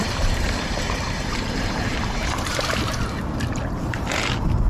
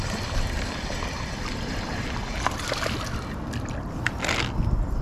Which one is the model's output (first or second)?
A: first